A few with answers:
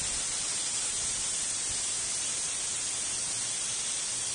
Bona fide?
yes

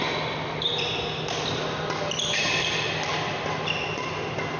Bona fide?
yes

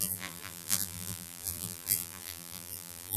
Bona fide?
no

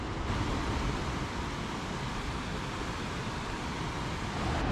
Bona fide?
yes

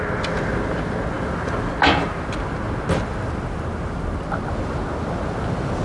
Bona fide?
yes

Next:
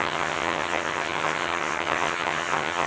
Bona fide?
no